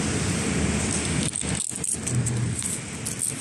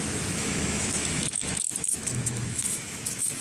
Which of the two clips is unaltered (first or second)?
first